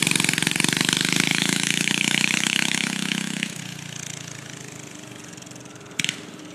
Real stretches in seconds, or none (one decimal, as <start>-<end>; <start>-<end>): 0.0-1.3; 3.6-6.5